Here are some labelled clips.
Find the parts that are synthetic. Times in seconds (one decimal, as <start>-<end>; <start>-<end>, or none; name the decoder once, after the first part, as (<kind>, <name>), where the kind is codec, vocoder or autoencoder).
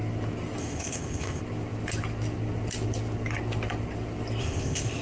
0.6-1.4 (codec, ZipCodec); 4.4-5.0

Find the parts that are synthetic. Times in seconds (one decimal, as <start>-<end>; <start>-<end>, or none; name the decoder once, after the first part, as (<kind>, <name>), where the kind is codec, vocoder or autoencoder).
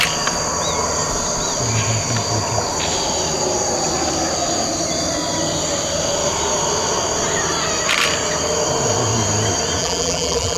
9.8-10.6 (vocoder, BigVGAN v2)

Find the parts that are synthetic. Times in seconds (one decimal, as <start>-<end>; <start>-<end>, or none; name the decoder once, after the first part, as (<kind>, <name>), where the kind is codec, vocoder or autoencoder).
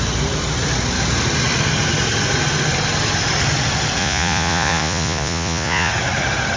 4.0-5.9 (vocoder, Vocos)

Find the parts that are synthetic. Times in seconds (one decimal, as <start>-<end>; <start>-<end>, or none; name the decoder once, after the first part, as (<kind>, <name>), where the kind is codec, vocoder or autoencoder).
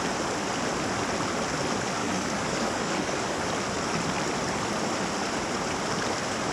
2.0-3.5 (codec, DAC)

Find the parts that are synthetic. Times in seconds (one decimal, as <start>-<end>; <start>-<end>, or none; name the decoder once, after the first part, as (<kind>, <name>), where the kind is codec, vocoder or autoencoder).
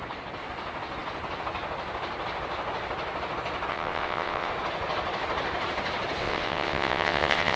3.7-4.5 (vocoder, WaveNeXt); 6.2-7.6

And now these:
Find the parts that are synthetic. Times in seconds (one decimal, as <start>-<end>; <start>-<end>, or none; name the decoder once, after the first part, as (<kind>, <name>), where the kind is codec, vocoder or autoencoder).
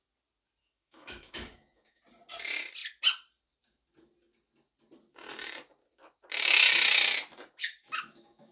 0.6-2.0 (autoencoder, DAC-VAE); 7.8-8.5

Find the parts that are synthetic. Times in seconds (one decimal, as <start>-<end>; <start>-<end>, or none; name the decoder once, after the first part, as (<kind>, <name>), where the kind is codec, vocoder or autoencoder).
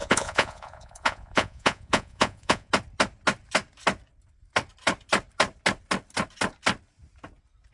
0.0-2.7 (vocoder, Vocos)